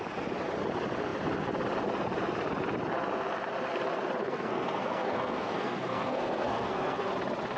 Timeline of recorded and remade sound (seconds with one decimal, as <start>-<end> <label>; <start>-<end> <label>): 0.0-4.2 recorded; 4.2-7.1 remade; 7.1-7.6 recorded